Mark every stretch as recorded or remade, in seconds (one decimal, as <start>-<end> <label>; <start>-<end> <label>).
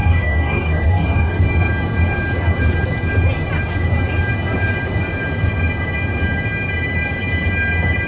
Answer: 0.0-1.4 remade; 1.4-8.1 recorded